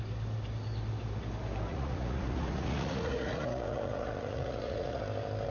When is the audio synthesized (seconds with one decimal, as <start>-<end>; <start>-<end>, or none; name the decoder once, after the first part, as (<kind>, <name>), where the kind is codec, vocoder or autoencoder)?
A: 1.7-5.0 (vocoder, Vocos)

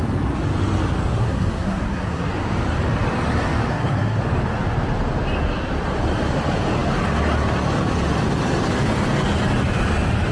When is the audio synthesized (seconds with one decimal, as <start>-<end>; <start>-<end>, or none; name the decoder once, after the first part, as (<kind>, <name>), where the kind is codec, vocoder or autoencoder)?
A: 1.1-2.3 (codec, SNAC); 3.7-4.2

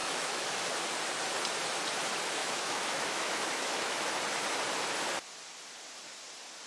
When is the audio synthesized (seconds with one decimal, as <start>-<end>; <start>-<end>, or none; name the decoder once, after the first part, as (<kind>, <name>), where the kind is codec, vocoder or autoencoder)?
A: 0.0-0.6 (autoencoder, DAC-VAE); 2.4-4.1

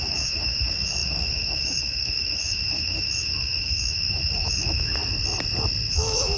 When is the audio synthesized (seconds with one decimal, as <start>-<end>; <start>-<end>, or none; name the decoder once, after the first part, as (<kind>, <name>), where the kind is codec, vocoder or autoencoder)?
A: 0.0-5.0 (autoencoder, DAC-VAE); 5.9-6.4

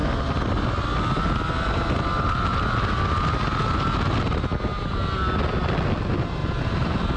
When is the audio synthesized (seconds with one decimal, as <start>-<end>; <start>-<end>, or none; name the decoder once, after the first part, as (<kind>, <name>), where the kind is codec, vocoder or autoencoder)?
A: 6.4-7.2 (vocoder, BigVGAN v2)

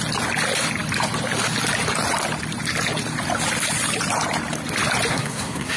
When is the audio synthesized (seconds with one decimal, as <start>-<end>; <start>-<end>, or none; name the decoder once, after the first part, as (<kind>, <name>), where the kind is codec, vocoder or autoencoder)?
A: 5.1-5.8 (codec, SNAC)

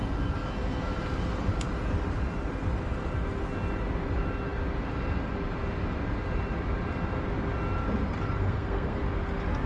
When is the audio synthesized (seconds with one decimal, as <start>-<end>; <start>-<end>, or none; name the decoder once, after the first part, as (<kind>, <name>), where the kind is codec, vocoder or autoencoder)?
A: 8.4-9.0 (codec, SNAC)

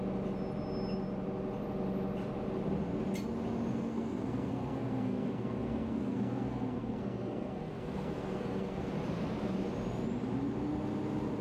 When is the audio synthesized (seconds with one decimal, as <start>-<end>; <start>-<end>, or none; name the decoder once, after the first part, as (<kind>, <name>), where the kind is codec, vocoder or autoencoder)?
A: 3.7-8.9 (codec, SNAC)